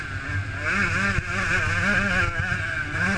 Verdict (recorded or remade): recorded